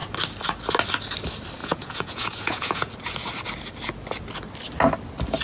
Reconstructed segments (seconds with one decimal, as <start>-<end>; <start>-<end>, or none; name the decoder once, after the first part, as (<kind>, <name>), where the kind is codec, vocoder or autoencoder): 1.6-2.9 (vocoder, Vocos)